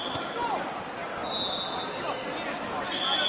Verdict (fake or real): real